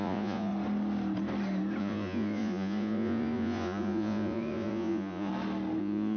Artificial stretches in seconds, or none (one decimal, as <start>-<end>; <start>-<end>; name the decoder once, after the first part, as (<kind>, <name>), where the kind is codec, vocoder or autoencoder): 0.0-0.5 (vocoder, Vocos); 1.8-5.3; 5.8-6.2